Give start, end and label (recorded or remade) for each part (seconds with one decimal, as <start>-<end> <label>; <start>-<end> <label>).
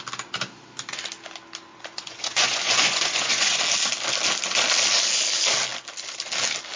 0.0-1.7 recorded; 1.7-3.6 remade; 3.6-6.8 recorded